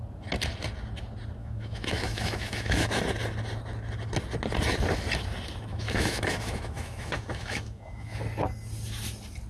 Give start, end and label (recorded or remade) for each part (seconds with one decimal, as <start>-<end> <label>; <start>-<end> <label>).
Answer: 0.0-1.4 recorded; 1.4-3.0 remade; 3.0-5.7 recorded; 5.7-8.2 remade; 8.2-9.5 recorded